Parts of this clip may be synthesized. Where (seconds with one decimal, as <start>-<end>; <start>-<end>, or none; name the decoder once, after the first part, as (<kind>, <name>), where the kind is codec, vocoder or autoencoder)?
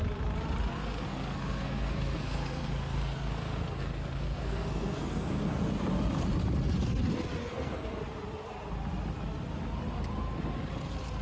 0.7-5.7 (codec, SNAC); 7.4-8.0